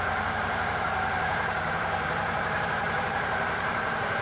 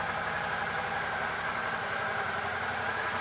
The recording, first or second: second